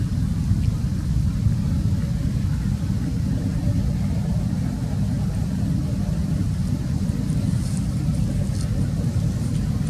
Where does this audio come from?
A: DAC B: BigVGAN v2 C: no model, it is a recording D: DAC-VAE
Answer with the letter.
C